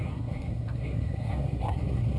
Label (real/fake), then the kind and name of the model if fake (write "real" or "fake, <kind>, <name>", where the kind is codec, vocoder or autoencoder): fake, codec, SNAC